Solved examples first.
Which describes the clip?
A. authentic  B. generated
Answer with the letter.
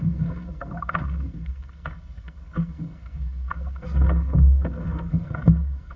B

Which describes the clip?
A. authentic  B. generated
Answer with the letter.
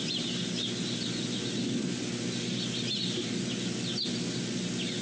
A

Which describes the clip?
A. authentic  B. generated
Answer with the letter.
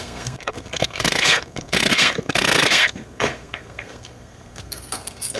B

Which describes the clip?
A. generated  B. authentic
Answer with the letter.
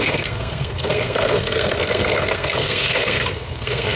A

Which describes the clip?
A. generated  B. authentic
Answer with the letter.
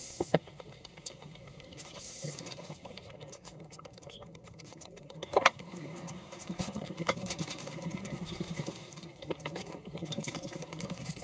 A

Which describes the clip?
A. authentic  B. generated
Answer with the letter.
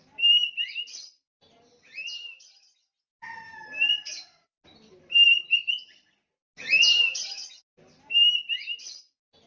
A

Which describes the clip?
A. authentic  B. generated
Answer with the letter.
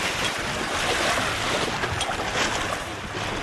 A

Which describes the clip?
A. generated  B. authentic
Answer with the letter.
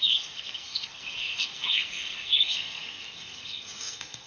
A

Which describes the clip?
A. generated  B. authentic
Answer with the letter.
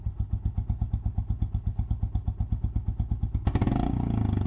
B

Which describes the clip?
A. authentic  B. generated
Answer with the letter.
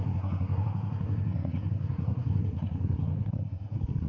B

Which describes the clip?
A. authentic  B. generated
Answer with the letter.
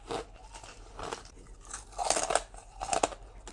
A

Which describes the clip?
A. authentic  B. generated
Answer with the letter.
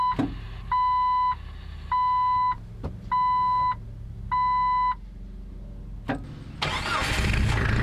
A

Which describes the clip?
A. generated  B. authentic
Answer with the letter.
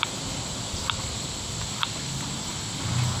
B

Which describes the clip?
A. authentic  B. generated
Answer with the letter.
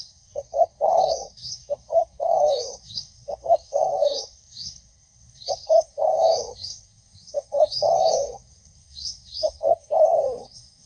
B